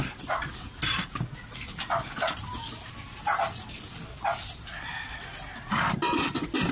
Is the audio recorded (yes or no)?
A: yes